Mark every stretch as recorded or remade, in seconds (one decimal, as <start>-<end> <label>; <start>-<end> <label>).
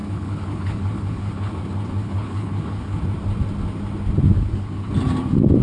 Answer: 0.0-1.6 remade; 1.6-2.0 recorded; 2.0-3.0 remade; 3.0-4.4 recorded; 4.4-4.9 remade; 4.9-5.6 recorded